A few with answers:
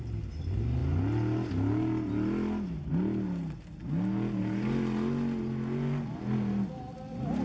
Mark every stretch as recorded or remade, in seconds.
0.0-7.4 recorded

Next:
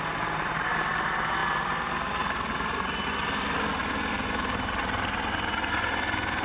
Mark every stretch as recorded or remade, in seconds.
0.0-6.4 recorded

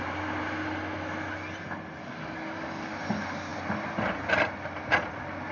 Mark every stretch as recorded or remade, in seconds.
0.0-2.0 recorded; 2.0-2.9 remade; 2.9-5.5 recorded

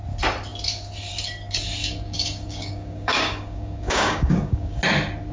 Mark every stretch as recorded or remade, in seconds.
0.0-1.8 recorded; 1.8-4.8 remade; 4.8-5.3 recorded

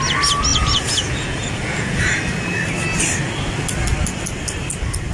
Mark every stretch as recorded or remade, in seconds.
0.0-0.5 recorded; 0.5-2.0 remade; 2.0-5.1 recorded

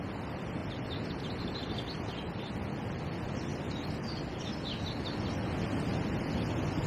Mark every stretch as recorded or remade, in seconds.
0.0-6.9 recorded